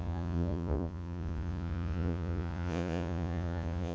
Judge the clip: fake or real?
fake